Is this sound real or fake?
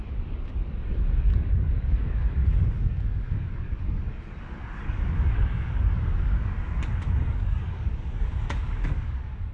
fake